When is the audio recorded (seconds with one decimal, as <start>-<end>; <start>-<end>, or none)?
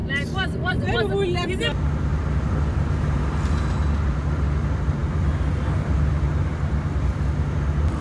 0.8-2.1; 2.8-8.0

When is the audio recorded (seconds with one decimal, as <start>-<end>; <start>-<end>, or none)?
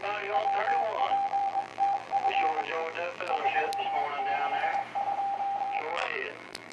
3.4-5.6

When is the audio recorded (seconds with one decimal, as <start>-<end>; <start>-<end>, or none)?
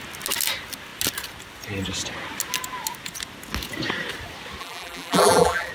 0.0-4.6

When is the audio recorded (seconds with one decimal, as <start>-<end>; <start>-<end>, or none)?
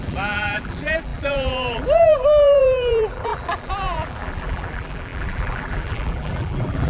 none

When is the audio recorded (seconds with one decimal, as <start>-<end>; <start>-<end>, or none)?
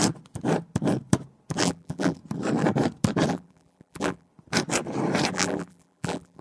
0.0-1.6; 2.2-3.3; 4.3-5.3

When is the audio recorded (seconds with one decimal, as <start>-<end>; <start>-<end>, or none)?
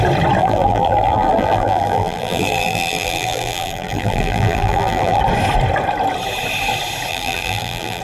0.0-0.4; 5.2-7.1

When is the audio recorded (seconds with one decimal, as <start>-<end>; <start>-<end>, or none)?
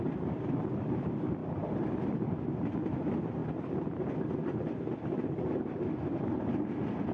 0.0-7.1